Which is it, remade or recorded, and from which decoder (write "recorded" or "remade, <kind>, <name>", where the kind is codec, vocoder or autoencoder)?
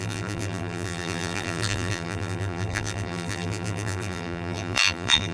remade, vocoder, BigVGAN v2